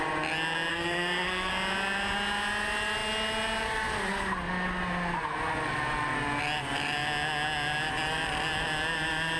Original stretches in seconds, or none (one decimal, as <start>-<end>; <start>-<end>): 0.0-0.7; 1.5-9.4